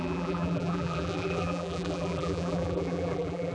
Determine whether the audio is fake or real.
fake